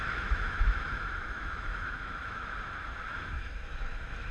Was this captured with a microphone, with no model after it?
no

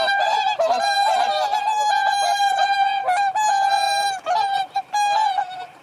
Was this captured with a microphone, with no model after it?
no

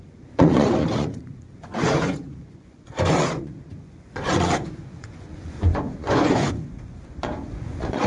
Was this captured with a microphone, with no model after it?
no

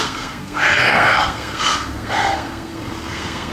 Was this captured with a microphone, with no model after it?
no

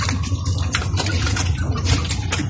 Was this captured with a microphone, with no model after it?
yes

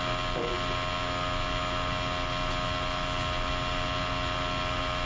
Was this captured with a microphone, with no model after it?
yes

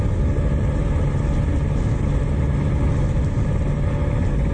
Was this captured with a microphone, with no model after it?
yes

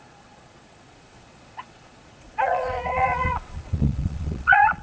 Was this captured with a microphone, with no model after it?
no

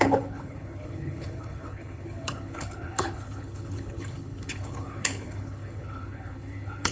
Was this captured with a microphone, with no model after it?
no